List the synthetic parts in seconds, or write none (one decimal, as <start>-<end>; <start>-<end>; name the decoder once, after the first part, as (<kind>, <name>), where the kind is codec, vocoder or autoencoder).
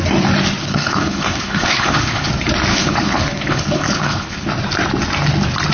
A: 0.6-2.3 (codec, HILCodec); 2.7-4.5